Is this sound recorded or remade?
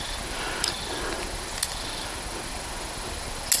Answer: recorded